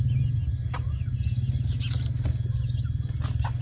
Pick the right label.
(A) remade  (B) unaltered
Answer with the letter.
B